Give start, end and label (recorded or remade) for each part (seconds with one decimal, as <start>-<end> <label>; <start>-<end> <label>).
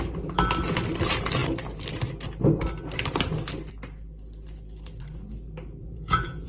0.0-5.8 recorded; 5.8-6.5 remade